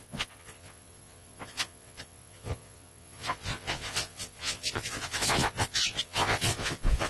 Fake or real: fake